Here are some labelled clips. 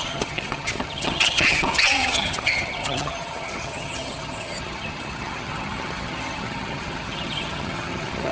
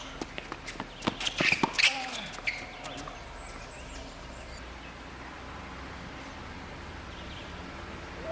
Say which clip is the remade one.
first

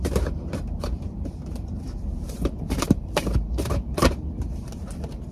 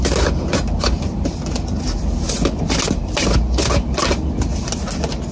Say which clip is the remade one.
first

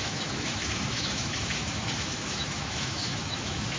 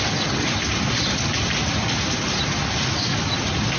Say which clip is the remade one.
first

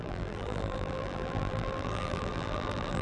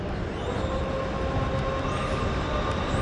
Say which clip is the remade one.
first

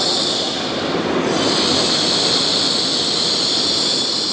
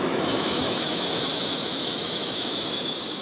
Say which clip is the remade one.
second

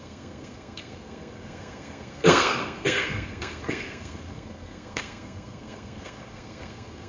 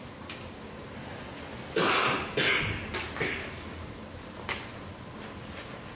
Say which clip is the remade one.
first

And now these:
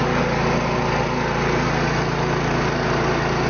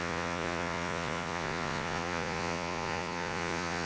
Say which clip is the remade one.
second